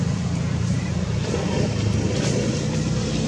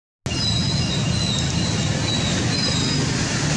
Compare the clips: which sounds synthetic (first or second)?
first